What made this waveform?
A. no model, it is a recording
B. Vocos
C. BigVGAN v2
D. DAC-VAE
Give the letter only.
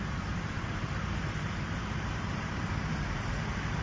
C